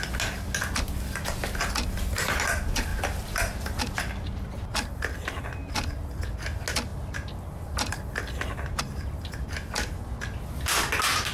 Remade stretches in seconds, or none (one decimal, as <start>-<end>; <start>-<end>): none